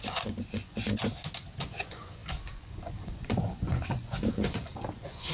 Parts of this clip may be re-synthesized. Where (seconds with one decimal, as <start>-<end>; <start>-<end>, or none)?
0.0-1.0; 1.6-5.3